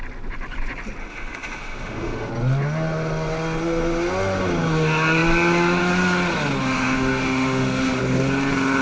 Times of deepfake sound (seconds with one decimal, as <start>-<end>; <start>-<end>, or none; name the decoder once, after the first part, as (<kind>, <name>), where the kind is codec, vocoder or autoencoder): 1.0-2.3 (autoencoder, DAC-VAE); 6.6-8.0